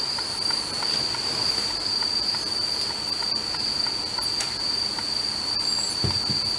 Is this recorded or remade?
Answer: recorded